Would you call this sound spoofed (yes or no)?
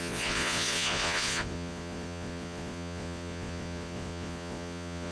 yes